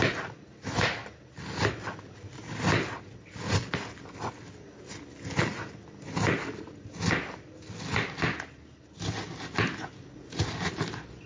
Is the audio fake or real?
real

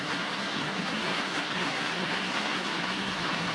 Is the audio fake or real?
fake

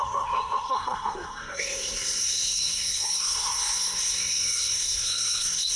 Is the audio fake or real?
fake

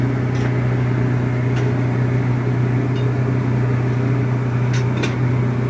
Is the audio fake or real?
real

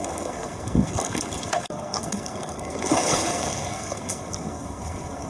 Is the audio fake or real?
fake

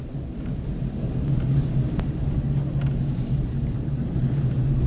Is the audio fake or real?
real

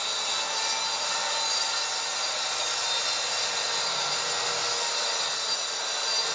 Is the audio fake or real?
real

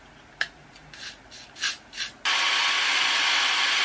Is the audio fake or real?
real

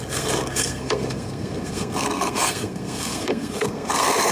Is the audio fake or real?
fake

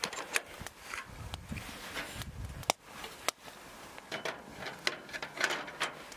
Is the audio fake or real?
real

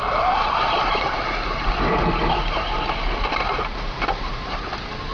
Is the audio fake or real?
real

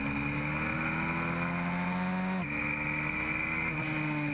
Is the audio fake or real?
real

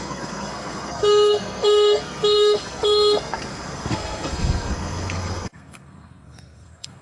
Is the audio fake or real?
fake